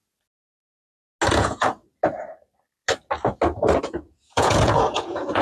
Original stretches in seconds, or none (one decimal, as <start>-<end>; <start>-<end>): 0.0-1.3; 1.8-3.8